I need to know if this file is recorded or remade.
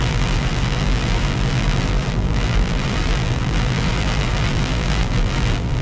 remade